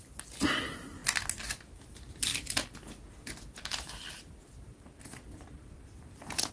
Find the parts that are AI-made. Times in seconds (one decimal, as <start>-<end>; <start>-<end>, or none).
none